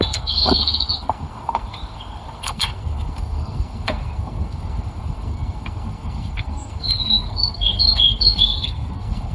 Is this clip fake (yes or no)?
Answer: yes